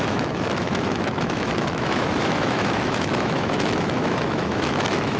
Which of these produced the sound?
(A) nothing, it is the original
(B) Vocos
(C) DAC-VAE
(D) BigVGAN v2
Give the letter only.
C